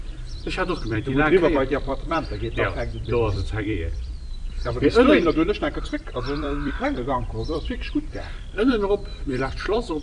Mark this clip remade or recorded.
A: remade